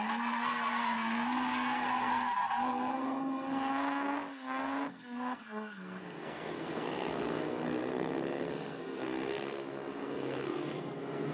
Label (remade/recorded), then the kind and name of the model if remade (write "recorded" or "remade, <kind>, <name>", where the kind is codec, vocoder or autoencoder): remade, codec, SNAC